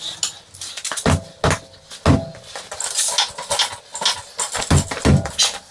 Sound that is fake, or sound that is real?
real